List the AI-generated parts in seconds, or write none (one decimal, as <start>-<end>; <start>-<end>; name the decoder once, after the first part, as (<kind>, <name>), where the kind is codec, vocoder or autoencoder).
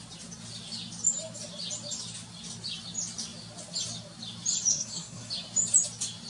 4.7-5.3 (codec, SNAC)